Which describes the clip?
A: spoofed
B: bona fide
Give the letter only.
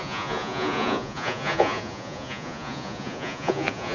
A